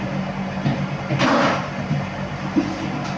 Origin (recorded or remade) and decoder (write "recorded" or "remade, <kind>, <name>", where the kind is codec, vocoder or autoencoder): recorded